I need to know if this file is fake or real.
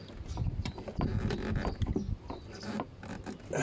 real